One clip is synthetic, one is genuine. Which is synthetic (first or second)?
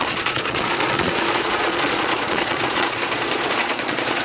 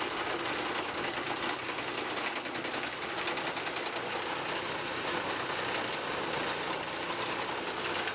first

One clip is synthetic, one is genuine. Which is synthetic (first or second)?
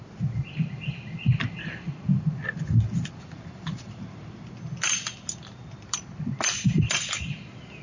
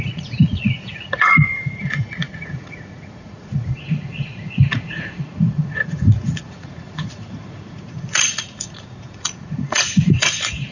second